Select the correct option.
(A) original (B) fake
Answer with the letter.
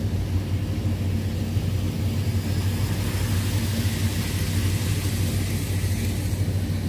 A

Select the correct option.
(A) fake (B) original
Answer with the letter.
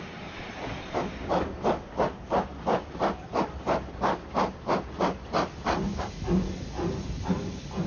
B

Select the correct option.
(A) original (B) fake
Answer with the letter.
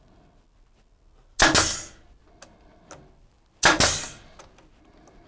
A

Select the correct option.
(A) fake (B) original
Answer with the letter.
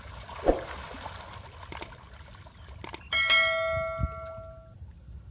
B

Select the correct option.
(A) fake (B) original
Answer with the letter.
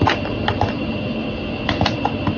B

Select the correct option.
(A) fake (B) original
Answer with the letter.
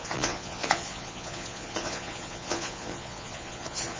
A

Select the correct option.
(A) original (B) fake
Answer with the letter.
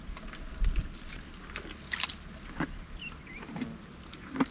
A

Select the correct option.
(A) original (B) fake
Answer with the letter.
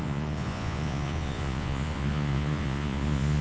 B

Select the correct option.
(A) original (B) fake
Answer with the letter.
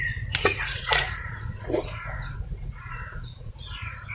B